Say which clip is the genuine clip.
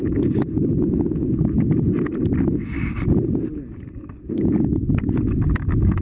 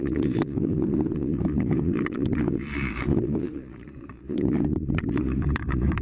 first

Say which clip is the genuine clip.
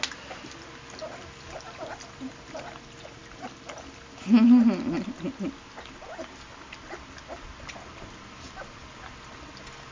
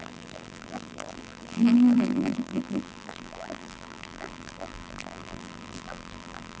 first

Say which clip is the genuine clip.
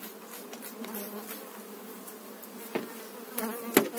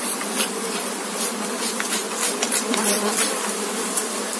first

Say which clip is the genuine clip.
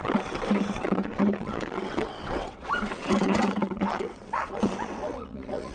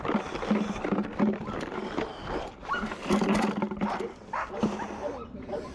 second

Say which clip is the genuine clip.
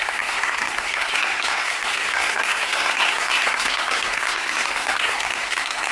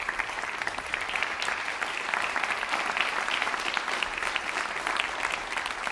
second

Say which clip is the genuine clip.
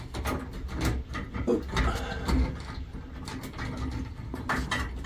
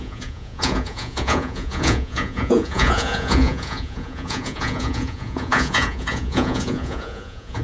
first